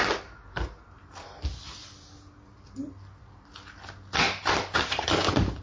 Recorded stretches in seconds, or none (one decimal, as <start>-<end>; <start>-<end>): 0.0-5.6